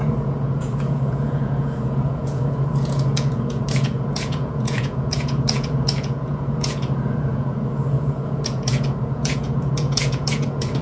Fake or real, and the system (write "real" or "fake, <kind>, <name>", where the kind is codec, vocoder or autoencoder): fake, vocoder, Vocos